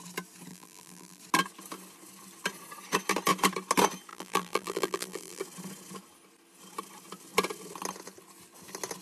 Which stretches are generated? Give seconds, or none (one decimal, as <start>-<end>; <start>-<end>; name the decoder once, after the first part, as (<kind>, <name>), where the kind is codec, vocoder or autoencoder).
0.5-1.2 (vocoder, BigVGAN v2); 4.1-5.4